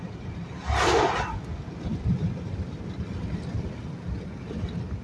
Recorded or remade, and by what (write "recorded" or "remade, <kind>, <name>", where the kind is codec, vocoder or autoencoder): recorded